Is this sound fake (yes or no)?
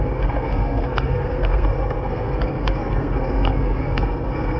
yes